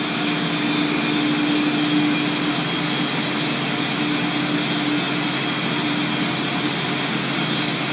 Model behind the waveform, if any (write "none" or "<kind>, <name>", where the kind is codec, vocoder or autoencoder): none